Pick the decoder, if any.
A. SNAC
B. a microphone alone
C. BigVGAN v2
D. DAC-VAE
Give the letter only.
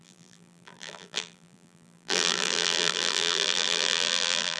C